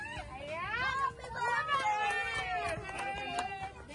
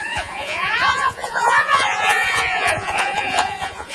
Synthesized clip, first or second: second